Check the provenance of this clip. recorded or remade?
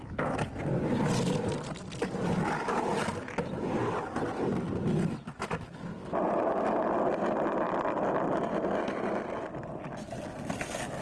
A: recorded